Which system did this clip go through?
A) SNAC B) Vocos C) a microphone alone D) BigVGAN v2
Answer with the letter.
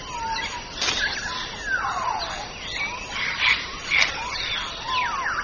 C